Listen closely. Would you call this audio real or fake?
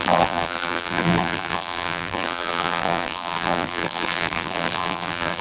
fake